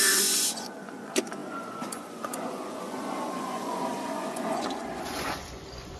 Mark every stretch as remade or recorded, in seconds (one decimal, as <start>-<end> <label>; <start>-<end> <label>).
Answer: 0.0-6.0 remade